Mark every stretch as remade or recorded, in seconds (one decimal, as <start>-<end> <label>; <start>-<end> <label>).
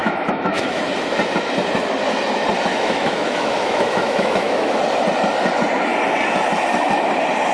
0.0-0.8 remade; 0.8-2.7 recorded; 2.7-4.8 remade; 4.8-7.5 recorded